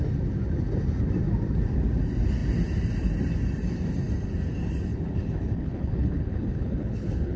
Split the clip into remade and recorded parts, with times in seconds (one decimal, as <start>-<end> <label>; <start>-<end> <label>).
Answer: 0.0-4.9 recorded; 4.9-7.4 remade